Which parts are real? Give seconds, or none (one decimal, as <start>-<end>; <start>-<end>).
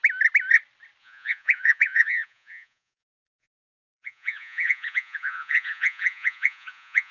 0.0-1.0